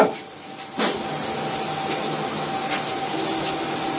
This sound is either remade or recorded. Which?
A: recorded